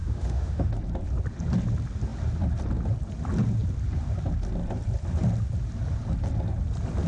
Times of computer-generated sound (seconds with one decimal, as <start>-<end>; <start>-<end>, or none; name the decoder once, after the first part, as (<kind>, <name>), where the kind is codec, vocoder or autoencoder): 0.0-0.7 (autoencoder, DAC-VAE)